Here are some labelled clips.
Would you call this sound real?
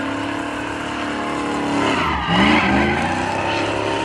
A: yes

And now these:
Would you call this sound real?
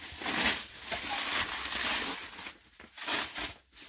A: yes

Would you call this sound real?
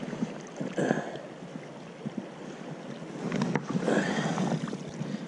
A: yes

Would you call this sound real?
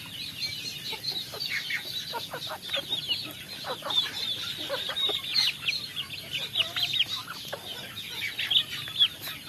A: yes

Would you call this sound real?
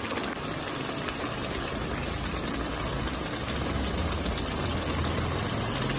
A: yes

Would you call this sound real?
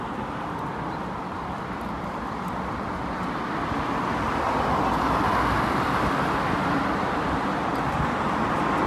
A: yes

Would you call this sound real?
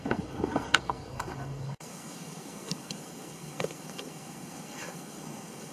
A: no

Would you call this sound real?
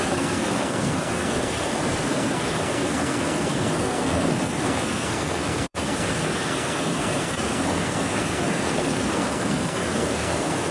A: no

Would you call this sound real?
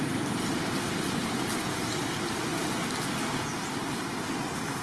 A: yes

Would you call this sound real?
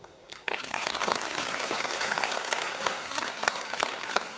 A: no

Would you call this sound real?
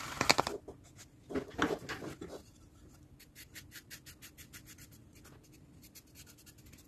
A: yes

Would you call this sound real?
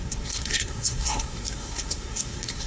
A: no